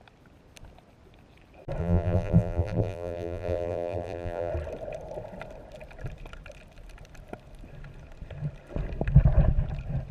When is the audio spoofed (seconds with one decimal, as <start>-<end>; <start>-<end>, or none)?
1.8-4.5